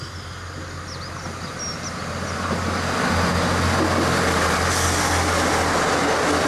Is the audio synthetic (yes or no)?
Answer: no